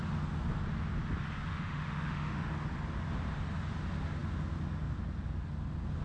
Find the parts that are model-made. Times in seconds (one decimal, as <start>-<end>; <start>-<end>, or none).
1.5-2.5